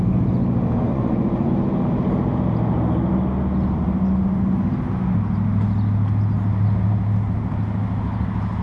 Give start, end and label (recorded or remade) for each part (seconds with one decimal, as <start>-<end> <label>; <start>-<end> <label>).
0.0-0.9 recorded; 0.9-1.5 remade; 1.5-8.6 recorded